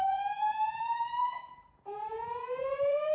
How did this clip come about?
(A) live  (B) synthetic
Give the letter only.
B